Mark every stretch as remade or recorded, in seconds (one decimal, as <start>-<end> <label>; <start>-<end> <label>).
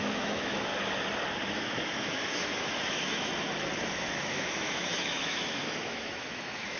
0.0-0.7 remade; 0.7-1.5 recorded; 1.5-3.3 remade; 3.3-3.9 recorded; 3.9-6.8 remade